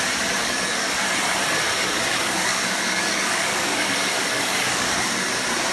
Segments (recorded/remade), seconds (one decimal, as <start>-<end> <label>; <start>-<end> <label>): 0.0-0.4 recorded; 0.4-0.9 remade; 0.9-1.7 recorded; 1.7-5.1 remade; 5.1-5.7 recorded